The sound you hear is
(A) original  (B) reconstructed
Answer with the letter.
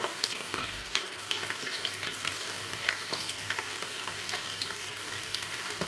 B